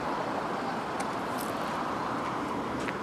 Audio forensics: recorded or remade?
recorded